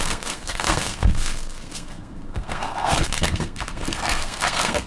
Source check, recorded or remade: remade